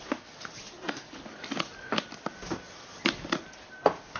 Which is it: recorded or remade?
recorded